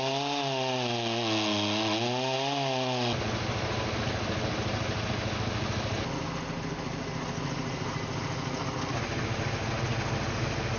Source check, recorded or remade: recorded